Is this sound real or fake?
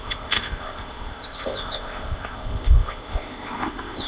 fake